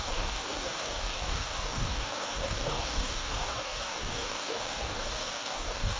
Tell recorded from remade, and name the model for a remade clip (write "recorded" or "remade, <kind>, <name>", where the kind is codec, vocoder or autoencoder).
remade, codec, DAC